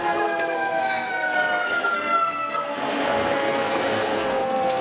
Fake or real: fake